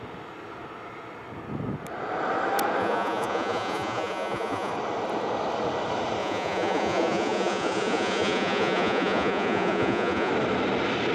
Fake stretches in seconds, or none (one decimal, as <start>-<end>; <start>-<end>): 2.8-4.7; 6.2-10.3